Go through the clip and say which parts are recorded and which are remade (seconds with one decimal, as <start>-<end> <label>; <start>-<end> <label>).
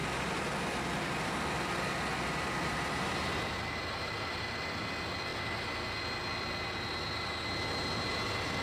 0.0-8.6 recorded